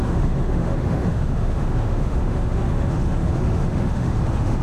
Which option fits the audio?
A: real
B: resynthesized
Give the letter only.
B